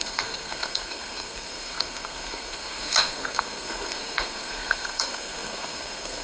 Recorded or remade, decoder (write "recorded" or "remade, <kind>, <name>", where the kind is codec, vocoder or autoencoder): remade, codec, SNAC